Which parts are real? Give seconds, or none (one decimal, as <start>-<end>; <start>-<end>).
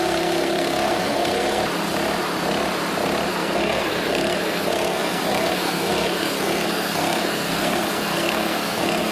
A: 1.6-3.3